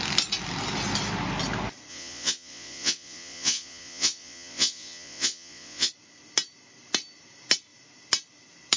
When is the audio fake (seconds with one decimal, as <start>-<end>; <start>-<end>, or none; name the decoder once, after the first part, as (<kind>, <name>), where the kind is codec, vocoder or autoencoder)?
1.9-5.9 (vocoder, Vocos)